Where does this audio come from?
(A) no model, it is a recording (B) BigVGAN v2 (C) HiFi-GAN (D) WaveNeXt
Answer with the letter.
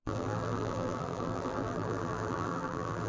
B